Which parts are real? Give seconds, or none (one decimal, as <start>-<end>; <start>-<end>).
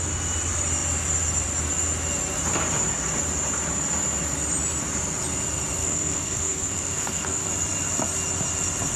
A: 0.0-5.8; 7.5-9.0